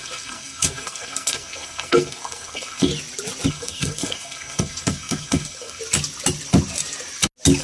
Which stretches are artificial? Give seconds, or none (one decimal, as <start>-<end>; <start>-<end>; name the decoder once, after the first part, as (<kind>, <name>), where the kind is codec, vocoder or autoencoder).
0.0-2.9 (codec, SNAC); 3.5-5.8